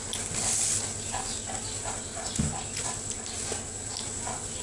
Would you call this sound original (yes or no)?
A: yes